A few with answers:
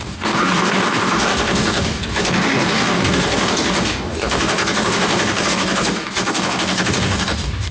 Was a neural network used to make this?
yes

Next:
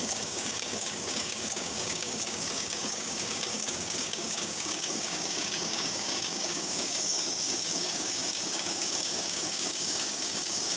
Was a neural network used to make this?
yes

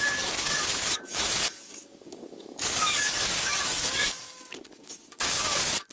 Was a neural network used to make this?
yes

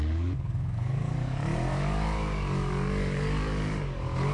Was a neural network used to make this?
yes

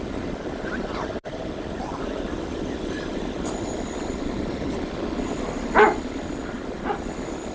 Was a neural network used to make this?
no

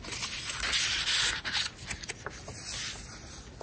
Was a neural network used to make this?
no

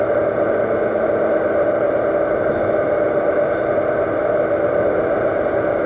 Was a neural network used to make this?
no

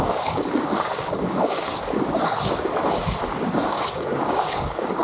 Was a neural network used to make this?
yes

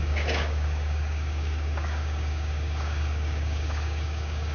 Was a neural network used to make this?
yes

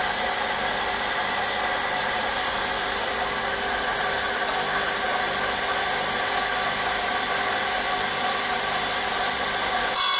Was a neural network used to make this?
no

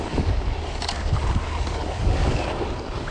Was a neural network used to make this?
yes